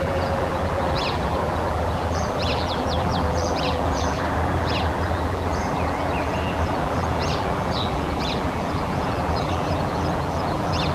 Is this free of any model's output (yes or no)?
no